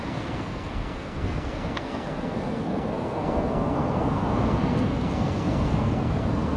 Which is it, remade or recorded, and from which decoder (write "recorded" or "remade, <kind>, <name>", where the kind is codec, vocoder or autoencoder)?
remade, codec, SNAC